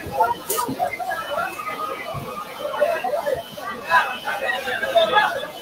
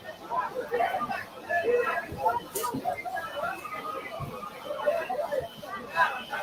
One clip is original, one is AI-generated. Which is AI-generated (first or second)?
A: first